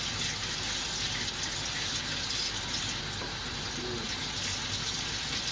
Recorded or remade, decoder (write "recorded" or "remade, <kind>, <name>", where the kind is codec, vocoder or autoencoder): recorded